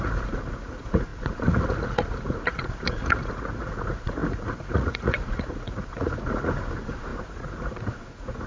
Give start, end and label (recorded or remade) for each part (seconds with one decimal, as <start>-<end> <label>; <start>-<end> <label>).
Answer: 0.0-8.5 remade